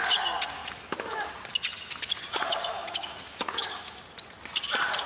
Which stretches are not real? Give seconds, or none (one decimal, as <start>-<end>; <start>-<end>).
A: 0.6-1.3; 2.7-4.0